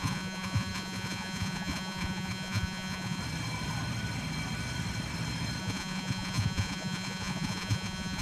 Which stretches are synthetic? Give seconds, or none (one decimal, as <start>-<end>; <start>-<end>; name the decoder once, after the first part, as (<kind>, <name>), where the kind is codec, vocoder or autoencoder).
0.0-3.2 (vocoder, Vocos); 5.6-8.2